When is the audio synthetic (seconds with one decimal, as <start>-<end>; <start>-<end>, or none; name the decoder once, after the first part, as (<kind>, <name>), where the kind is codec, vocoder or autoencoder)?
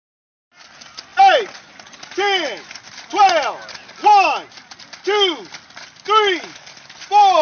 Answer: none